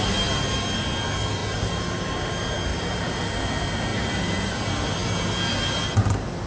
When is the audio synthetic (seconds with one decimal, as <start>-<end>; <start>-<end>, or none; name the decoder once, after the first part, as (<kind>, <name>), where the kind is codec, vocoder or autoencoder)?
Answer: 1.4-2.1 (vocoder, BigVGAN v2); 2.7-3.2; 3.9-4.5